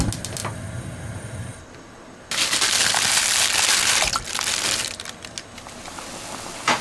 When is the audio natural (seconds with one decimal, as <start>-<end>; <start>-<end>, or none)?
0.0-6.8